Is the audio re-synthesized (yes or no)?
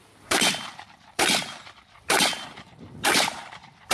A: yes